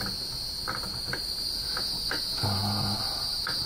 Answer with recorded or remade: recorded